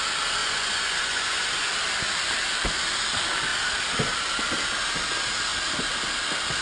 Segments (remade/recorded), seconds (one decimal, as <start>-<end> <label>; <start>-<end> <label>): 0.0-0.4 recorded; 0.4-1.7 remade; 1.7-6.6 recorded